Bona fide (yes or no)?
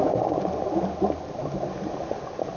yes